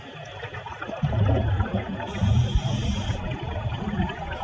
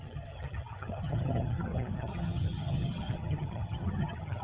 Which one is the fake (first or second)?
second